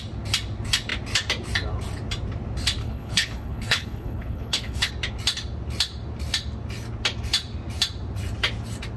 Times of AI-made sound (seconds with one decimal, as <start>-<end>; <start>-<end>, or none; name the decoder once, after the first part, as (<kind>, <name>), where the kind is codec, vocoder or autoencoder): 2.8-4.9 (codec, HILCodec)